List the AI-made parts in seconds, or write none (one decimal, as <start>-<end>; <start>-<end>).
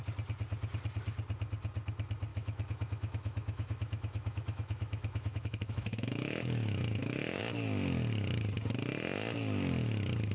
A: 2.3-7.4